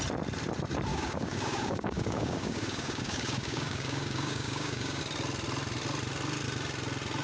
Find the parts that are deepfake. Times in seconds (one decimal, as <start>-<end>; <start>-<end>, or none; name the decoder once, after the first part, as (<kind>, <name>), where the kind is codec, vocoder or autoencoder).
0.9-5.0 (codec, DAC)